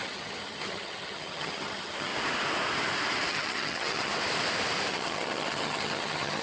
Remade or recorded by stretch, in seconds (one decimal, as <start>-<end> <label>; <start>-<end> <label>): 0.0-2.1 remade; 2.1-3.3 recorded; 3.3-4.1 remade; 4.1-4.9 recorded; 4.9-6.4 remade